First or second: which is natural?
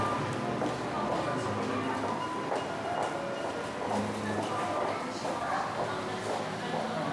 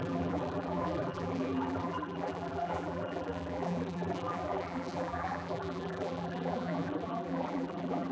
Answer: first